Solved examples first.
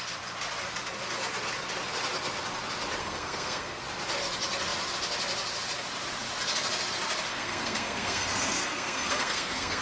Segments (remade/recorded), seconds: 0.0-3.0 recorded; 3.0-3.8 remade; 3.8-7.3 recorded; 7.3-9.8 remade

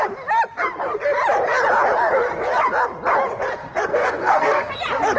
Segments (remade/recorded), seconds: 0.0-3.9 recorded; 3.9-4.7 remade; 4.7-5.2 recorded

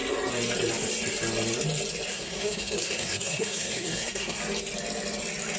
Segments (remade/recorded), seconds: 0.0-2.1 recorded; 2.1-4.4 remade; 4.4-5.6 recorded

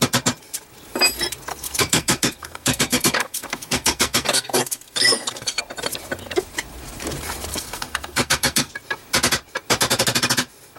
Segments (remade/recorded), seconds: 0.0-1.5 recorded; 1.5-5.6 remade; 5.6-7.5 recorded; 7.5-8.7 remade; 8.7-10.8 recorded